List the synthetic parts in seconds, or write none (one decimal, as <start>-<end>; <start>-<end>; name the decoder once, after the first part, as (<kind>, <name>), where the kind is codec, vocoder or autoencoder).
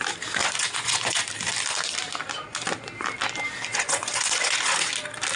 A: 0.4-1.2 (vocoder, Vocos); 3.7-4.9